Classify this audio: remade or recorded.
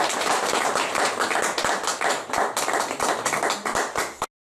recorded